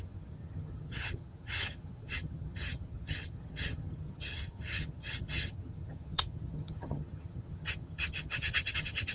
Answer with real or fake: fake